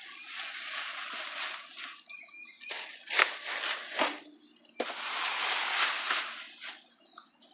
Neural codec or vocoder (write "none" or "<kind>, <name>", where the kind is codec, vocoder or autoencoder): none